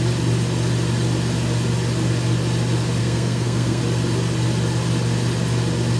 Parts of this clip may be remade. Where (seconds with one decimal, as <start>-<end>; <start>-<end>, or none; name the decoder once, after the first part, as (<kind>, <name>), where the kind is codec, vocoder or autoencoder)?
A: 3.0-3.8 (codec, SNAC)